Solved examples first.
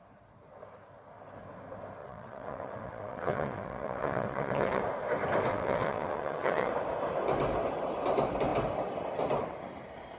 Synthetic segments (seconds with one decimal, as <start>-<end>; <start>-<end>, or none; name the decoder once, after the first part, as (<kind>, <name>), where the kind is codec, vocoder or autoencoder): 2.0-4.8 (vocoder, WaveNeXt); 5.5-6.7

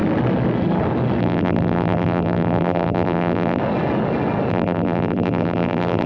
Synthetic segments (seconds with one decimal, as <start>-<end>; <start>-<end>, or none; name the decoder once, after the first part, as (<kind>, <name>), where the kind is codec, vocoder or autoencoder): 1.2-3.6 (vocoder, BigVGAN v2); 4.5-6.1

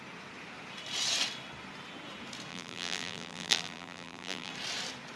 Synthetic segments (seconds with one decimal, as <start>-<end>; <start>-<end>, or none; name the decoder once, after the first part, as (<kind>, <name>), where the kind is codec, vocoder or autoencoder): 2.5-4.5 (vocoder, BigVGAN v2)

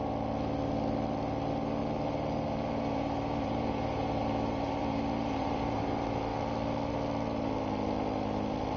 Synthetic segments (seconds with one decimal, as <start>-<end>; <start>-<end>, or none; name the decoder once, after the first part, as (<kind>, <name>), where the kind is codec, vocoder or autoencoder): 1.8-5.8 (vocoder, BigVGAN v2)